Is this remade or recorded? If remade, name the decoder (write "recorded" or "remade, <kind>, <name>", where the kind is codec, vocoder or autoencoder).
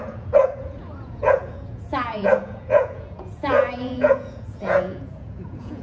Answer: remade, vocoder, Vocos